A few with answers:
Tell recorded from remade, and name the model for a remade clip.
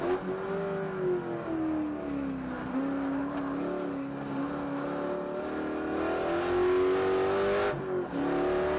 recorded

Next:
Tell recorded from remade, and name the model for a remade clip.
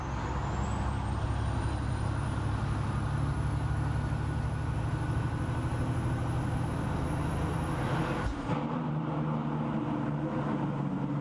recorded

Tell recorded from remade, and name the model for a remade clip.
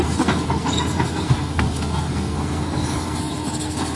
remade, codec, SNAC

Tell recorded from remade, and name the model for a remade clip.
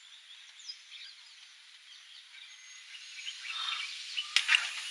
recorded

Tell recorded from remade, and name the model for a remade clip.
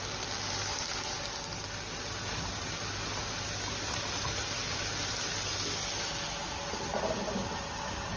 recorded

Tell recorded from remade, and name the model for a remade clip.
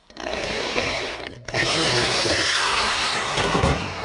remade, codec, SNAC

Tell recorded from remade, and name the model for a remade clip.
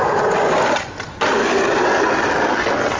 recorded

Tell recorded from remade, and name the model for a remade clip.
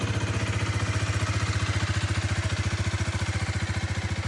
recorded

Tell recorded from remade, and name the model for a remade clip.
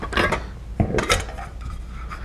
recorded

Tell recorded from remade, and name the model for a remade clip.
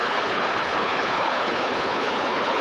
remade, codec, HILCodec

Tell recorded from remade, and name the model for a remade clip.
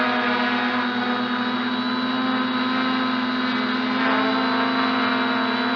recorded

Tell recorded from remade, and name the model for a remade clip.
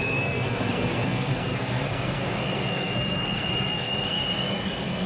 remade, codec, SNAC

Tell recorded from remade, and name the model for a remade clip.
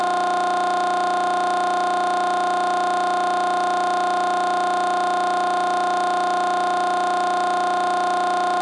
recorded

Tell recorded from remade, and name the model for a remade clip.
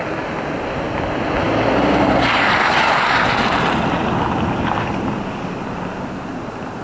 recorded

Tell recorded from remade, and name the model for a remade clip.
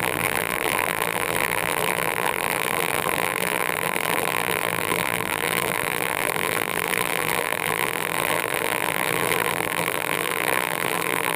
remade, vocoder, BigVGAN v2